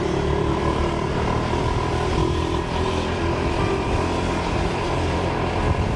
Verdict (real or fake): fake